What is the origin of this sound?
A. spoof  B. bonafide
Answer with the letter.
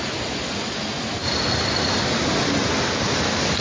B